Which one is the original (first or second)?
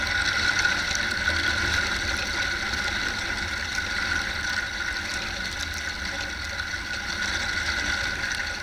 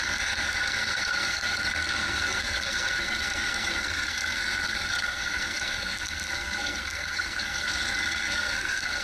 first